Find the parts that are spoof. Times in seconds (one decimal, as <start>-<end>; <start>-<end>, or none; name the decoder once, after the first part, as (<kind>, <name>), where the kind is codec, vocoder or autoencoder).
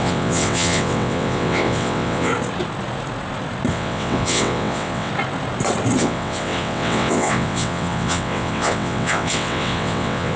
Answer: 0.0-2.3 (vocoder, WaveNeXt); 3.7-5.1; 6.0-10.4